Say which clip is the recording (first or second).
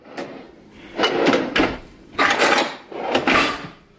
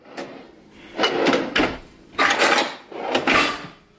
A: second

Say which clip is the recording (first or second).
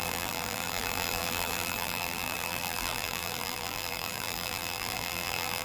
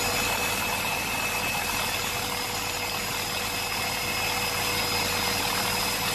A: second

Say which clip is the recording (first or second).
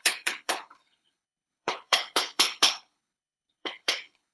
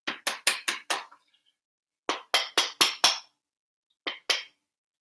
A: second